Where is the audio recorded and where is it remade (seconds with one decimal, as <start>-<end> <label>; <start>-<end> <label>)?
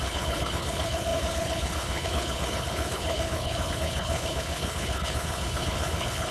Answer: 0.0-6.3 remade